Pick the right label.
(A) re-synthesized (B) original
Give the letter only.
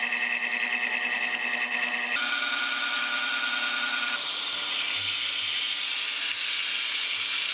B